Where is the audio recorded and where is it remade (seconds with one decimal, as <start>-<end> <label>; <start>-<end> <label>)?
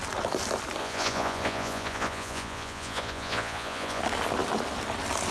0.0-0.8 recorded; 0.8-4.0 remade; 4.0-5.3 recorded